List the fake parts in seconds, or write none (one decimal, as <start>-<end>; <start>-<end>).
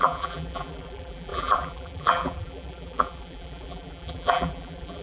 0.0-5.0